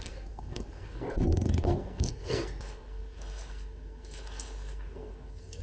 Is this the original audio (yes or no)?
no